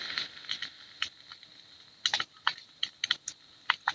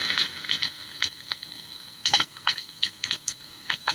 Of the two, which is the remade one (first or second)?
second